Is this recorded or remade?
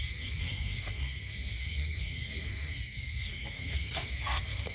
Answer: remade